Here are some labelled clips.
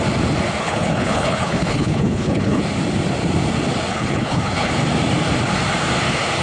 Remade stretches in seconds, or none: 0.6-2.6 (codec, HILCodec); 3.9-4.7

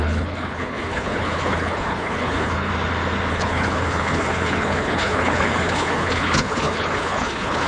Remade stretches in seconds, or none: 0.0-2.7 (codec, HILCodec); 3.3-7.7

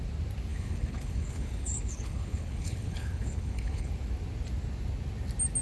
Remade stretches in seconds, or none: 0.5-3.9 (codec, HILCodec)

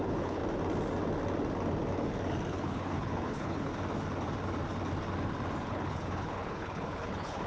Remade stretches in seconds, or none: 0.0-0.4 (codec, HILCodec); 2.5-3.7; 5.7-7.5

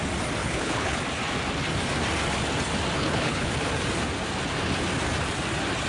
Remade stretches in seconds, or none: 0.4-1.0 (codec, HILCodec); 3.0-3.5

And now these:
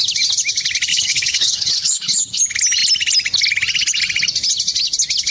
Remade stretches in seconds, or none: 0.9-2.4 (codec, HILCodec)